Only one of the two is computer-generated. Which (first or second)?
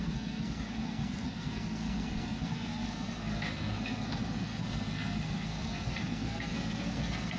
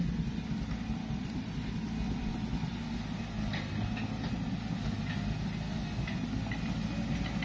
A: first